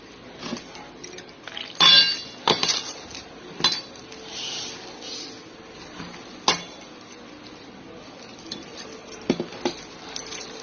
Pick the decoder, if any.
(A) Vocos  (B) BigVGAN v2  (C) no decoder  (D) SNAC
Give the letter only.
C